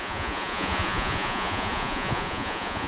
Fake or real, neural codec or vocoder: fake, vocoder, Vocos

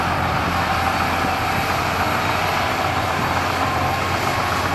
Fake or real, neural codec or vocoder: real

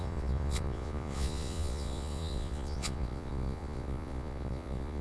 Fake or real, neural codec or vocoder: fake, vocoder, Vocos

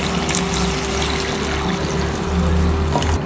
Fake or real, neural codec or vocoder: real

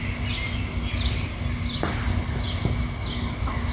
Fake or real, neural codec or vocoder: real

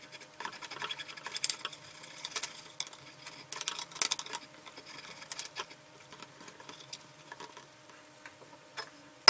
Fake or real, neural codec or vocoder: real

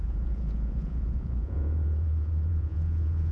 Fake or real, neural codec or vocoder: fake, vocoder, Vocos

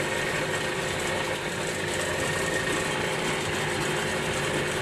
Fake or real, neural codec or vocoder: real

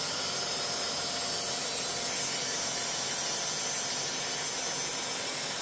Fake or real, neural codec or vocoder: real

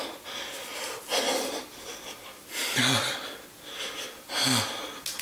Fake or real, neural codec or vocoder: real